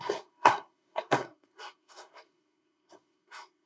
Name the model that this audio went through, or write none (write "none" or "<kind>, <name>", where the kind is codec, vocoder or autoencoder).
codec, SNAC